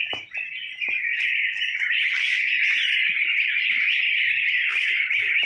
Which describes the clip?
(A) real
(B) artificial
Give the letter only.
A